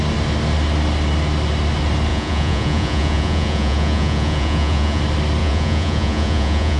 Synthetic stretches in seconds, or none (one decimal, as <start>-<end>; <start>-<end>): 2.1-5.0; 5.4-6.8